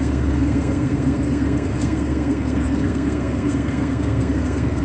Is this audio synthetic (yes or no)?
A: yes